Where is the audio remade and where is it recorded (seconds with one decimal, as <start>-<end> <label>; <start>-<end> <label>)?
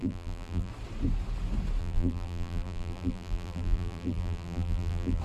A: 0.0-0.7 remade; 0.7-1.8 recorded; 1.8-5.2 remade